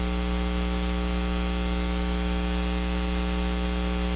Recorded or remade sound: recorded